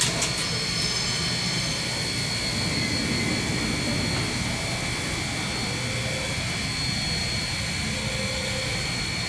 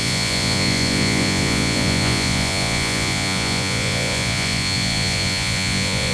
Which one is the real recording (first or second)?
first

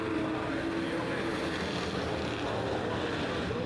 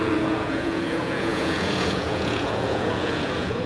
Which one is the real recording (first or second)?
first